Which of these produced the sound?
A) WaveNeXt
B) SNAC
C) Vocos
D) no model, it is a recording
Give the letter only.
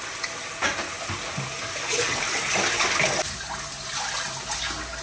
D